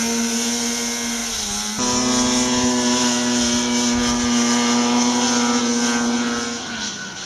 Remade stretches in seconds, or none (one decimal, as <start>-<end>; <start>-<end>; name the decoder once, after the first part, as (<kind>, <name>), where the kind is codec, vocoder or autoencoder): none